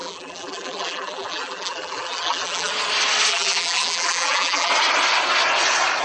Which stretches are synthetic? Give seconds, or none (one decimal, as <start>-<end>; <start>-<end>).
0.0-2.7; 3.3-4.7